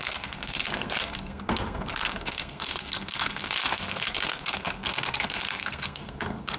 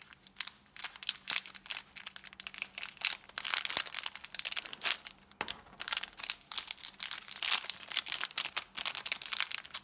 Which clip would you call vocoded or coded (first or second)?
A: first